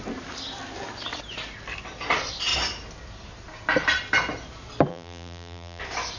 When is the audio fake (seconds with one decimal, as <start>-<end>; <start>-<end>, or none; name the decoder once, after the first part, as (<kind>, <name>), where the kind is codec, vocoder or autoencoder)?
4.9-5.8 (vocoder, BigVGAN v2)

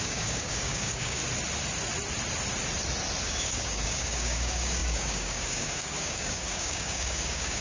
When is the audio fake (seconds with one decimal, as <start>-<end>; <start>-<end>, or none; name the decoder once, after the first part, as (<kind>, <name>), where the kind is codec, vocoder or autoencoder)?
0.0-1.2 (codec, DAC); 3.2-7.6